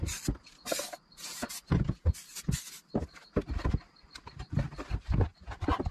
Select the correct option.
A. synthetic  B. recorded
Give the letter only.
B